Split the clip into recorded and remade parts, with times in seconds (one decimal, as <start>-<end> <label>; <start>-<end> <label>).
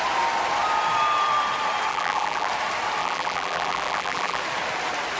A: 0.0-1.9 recorded; 1.9-2.5 remade; 2.5-3.0 recorded; 3.0-4.4 remade; 4.4-5.2 recorded